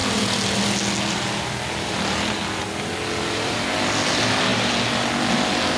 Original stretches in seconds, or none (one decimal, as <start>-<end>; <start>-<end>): 0.0-5.8